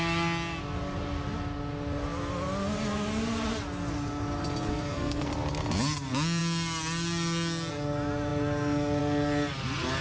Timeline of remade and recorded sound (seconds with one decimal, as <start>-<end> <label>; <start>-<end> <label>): 0.0-4.7 recorded; 4.7-5.3 remade; 5.3-10.0 recorded